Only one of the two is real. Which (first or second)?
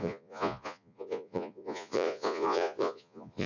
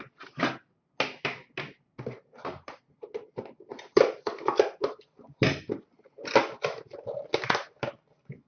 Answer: second